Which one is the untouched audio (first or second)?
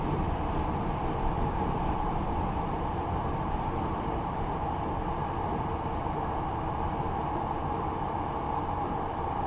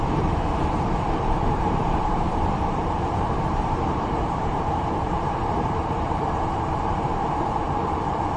first